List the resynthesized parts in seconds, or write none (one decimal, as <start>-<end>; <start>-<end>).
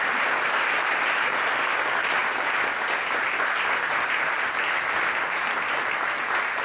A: none